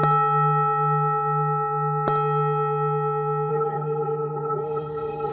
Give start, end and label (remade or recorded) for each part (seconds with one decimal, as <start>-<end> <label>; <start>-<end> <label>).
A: 0.0-3.5 recorded; 3.5-5.3 remade